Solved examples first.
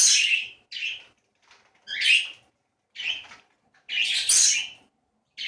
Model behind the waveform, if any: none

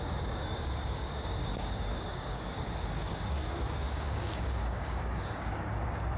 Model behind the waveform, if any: codec, DAC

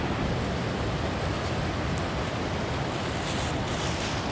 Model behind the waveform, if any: none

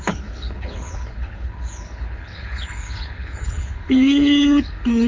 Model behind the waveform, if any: codec, HILCodec